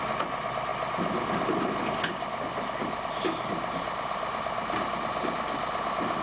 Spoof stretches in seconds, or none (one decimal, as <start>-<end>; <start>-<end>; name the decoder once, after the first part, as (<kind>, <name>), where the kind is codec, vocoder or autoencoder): none

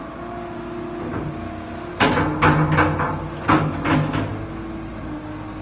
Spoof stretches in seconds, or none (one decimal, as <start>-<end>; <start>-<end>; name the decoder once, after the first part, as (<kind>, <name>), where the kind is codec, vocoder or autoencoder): none

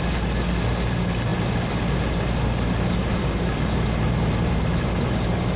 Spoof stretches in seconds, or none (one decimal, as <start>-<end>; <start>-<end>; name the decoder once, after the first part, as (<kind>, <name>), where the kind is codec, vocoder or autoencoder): none

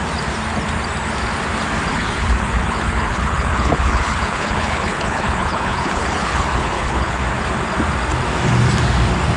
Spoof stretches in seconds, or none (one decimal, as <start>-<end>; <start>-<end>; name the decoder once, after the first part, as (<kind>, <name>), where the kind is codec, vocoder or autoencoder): 1.9-7.2 (codec, HILCodec)

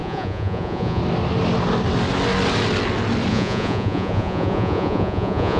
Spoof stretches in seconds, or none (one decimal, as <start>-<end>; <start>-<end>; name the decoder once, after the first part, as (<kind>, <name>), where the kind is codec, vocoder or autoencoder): 0.0-1.0 (vocoder, Vocos); 3.3-5.6

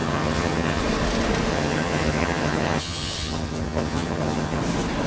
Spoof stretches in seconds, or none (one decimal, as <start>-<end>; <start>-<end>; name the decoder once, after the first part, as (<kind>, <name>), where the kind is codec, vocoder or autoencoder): 0.0-0.8 (vocoder, HiFi-GAN); 1.5-4.6